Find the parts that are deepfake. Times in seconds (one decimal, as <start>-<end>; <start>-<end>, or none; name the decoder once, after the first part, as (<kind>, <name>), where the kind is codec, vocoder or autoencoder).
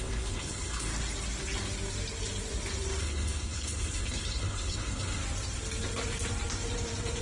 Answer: 0.0-0.9 (codec, HILCodec); 3.0-5.2